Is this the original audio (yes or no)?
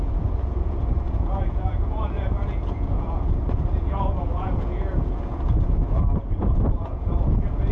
no